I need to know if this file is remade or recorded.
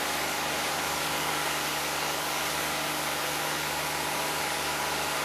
remade